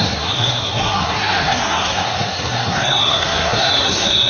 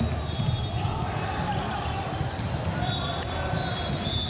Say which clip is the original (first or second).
second